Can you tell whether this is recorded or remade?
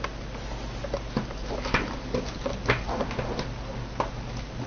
recorded